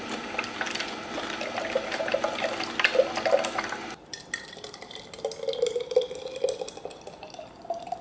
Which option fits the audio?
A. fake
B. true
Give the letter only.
B